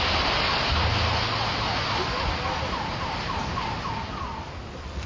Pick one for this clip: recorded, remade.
recorded